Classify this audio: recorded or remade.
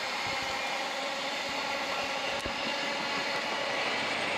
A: recorded